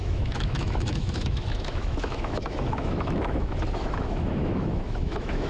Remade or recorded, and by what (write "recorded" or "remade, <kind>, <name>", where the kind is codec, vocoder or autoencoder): remade, autoencoder, DAC-VAE